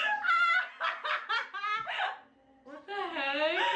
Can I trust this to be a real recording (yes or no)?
yes